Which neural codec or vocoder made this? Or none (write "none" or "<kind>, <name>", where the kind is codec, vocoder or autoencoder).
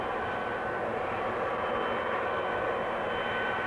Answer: none